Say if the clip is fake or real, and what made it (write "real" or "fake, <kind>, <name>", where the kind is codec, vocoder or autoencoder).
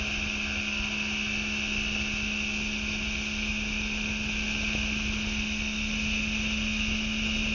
real